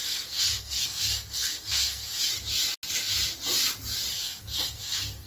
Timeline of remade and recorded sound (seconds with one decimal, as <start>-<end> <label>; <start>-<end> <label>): 0.0-2.3 remade; 2.3-4.1 recorded; 4.1-5.3 remade

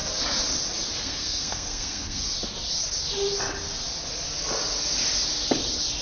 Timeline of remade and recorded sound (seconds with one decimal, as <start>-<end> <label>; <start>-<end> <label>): 0.0-1.0 recorded; 1.0-2.2 remade; 2.2-6.0 recorded

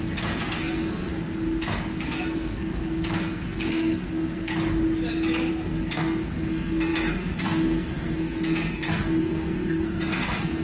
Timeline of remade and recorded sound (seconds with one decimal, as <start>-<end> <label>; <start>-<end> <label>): 0.0-1.1 remade; 1.1-2.0 recorded; 2.0-4.5 remade; 4.5-5.5 recorded; 5.5-10.6 remade

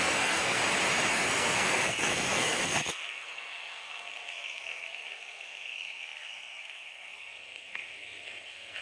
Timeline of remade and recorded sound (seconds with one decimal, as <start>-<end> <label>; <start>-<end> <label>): 0.0-0.6 remade; 0.6-1.1 recorded; 1.1-8.8 remade

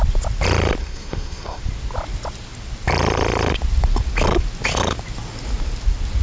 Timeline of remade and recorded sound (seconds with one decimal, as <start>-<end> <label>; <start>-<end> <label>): 0.0-0.8 recorded; 0.8-1.6 remade; 1.6-6.2 recorded

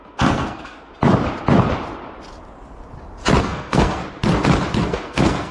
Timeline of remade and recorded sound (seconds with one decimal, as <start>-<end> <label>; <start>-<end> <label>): 0.0-0.9 remade; 0.9-3.4 recorded; 3.4-4.0 remade; 4.0-4.8 recorded; 4.8-5.5 remade

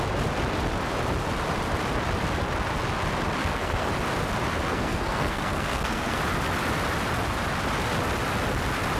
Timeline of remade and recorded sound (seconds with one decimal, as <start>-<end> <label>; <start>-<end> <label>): 0.0-3.4 recorded; 3.4-3.9 remade; 3.9-4.7 recorded; 4.7-6.2 remade; 6.2-9.0 recorded

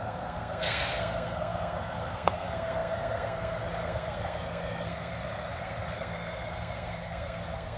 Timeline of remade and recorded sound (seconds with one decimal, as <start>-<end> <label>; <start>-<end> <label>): 0.0-7.8 remade